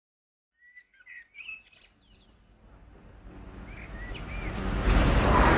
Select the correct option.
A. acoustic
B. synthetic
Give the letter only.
A